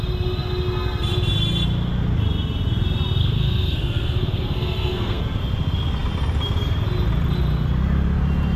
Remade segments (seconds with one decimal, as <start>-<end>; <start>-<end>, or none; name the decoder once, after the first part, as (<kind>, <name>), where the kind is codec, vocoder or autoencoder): 3.2-5.2 (codec, SNAC)